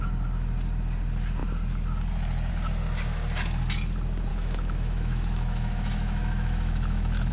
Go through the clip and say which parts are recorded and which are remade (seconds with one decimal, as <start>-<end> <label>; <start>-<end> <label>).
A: 0.0-4.3 recorded; 4.3-7.3 remade